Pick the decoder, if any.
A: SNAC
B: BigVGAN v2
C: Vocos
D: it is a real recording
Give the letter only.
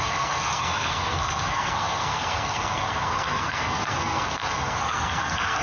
A